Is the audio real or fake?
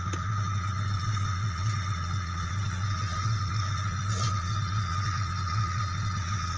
fake